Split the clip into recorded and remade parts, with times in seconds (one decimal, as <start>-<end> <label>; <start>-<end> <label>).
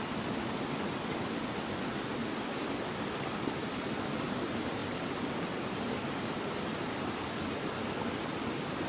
0.0-8.9 recorded